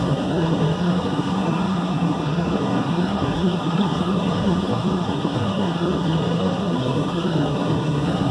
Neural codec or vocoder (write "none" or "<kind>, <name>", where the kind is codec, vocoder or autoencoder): codec, SNAC